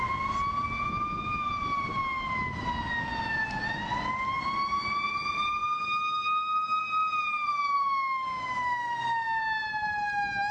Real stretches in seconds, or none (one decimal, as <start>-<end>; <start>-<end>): 0.0-5.6; 6.8-7.5; 9.0-10.5